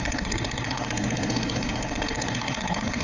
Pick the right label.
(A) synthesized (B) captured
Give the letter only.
A